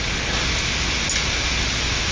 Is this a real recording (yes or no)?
yes